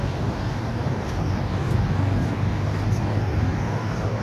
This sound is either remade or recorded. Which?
remade